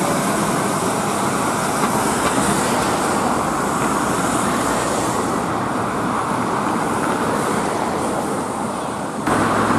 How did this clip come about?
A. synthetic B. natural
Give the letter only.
B